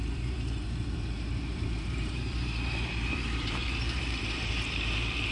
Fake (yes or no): yes